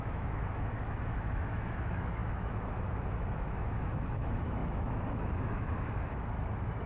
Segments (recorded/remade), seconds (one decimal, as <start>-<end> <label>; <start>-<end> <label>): 0.0-6.9 remade